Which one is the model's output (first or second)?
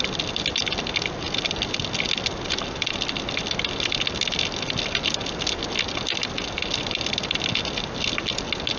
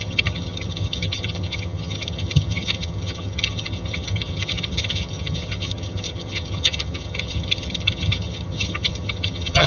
second